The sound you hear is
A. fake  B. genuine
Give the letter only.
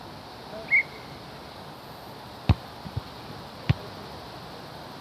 B